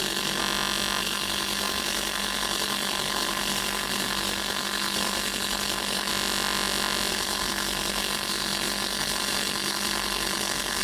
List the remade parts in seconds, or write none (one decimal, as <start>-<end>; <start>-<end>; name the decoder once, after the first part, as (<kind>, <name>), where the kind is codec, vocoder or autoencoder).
0.0-0.4 (codec, SNAC); 1.0-6.1; 7.1-10.8